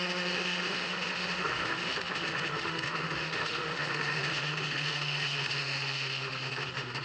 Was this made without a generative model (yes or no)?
no